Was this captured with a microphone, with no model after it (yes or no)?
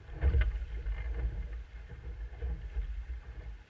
yes